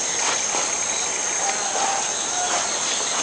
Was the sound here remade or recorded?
recorded